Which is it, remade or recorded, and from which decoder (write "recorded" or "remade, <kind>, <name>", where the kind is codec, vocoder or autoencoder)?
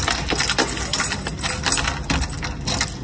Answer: recorded